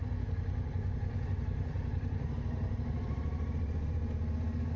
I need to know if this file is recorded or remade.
recorded